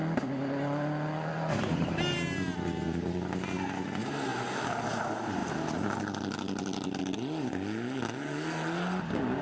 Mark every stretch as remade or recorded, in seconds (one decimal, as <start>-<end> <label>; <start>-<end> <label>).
0.0-9.4 recorded